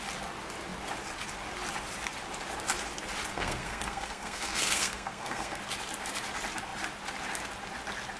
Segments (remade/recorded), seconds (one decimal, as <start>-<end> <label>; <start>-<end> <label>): 0.0-3.3 recorded; 3.3-5.6 remade; 5.6-8.2 recorded